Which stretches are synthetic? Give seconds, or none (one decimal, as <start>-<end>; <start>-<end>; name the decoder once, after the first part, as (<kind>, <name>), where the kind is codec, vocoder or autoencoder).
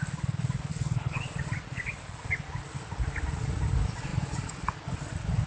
0.7-1.2 (codec, HILCodec)